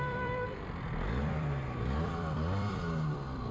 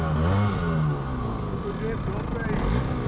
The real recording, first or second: second